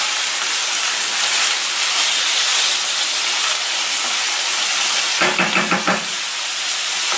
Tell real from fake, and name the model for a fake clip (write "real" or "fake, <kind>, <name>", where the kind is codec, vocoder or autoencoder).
real